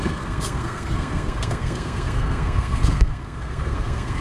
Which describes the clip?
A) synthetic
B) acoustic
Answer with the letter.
A